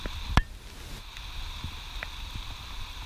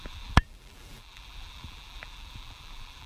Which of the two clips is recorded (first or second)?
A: first